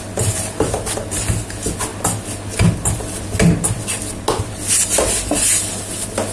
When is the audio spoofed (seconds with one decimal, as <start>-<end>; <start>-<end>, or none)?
none